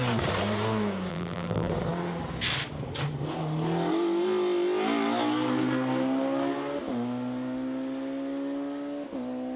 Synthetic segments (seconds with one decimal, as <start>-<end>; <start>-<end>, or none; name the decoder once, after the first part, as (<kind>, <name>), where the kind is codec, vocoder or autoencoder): 1.1-1.7 (vocoder, BigVGAN v2)